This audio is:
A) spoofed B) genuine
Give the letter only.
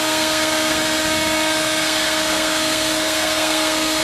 A